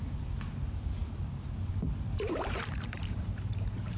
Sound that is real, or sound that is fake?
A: fake